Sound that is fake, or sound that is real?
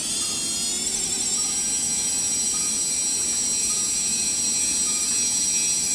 real